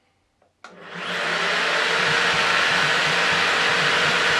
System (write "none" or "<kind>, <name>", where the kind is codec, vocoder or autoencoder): none